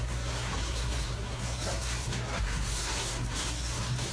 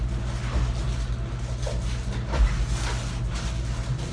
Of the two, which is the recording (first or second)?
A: second